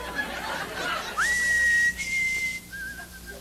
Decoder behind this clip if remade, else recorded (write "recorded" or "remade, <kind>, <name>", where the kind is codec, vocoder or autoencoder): recorded